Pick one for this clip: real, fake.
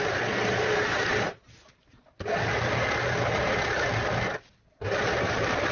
real